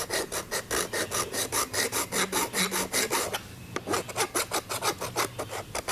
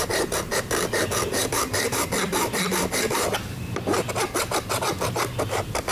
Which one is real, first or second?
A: first